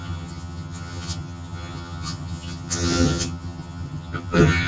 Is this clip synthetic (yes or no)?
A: yes